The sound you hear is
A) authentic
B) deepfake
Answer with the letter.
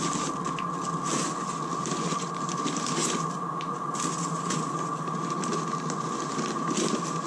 A